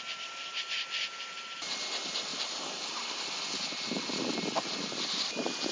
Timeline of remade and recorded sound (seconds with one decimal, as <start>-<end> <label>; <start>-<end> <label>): 0.0-2.3 recorded; 2.3-5.7 remade